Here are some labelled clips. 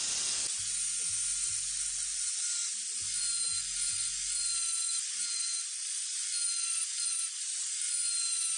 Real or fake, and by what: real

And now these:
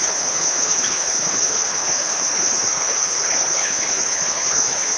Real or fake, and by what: fake, codec, HILCodec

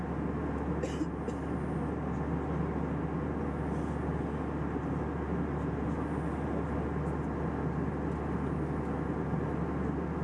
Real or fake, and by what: real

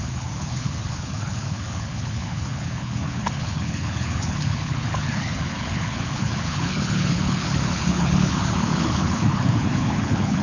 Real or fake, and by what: fake, codec, HILCodec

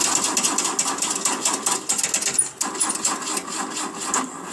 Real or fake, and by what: real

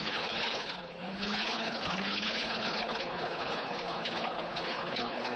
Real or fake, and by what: fake, codec, HILCodec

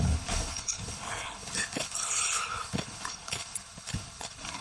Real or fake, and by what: fake, codec, HILCodec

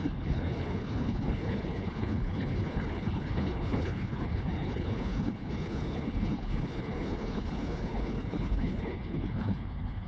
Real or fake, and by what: fake, codec, HILCodec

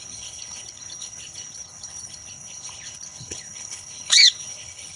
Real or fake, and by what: fake, codec, HILCodec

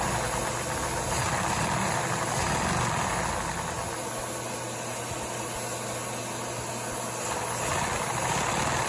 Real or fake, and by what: real